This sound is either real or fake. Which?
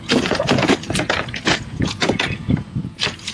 fake